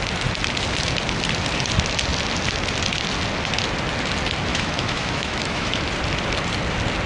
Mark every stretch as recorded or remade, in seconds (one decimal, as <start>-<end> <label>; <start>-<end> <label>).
0.0-4.5 recorded; 4.5-5.8 remade; 5.8-7.1 recorded